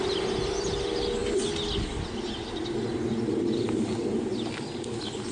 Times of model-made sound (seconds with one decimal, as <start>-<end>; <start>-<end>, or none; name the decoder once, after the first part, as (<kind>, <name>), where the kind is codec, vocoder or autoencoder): none